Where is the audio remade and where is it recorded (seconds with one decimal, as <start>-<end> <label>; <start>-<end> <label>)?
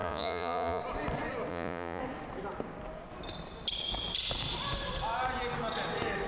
0.0-0.8 remade; 0.8-1.5 recorded; 1.5-2.0 remade; 2.0-6.3 recorded